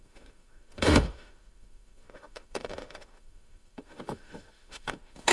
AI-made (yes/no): yes